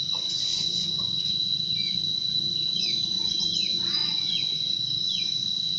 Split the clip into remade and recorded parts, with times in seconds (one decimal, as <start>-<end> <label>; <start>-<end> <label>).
0.0-5.8 remade